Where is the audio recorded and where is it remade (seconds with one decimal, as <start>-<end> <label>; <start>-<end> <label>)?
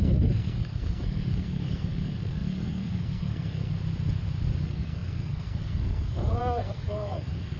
0.0-3.7 remade; 3.7-4.6 recorded; 4.6-7.6 remade